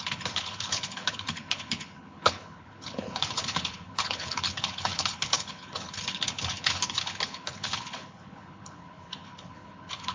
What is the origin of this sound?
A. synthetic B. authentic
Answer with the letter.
A